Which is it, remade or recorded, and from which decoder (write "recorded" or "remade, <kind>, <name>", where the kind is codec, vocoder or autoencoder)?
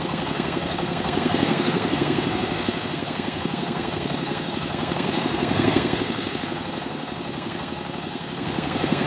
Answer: remade, codec, SNAC